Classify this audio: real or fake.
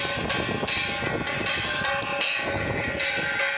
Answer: real